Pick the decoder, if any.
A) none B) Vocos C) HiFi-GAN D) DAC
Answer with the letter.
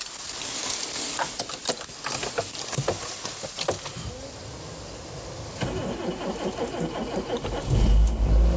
A